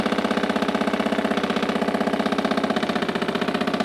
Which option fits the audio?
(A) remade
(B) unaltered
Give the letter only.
B